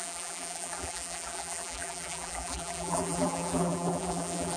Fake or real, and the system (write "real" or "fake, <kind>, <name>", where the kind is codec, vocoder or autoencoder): fake, vocoder, BigVGAN v2